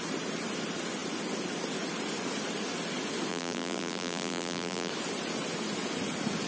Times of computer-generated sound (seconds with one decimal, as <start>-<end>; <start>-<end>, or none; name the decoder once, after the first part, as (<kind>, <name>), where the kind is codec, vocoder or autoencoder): 3.3-4.9 (vocoder, BigVGAN v2)